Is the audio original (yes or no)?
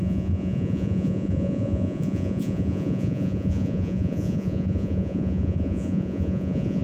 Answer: no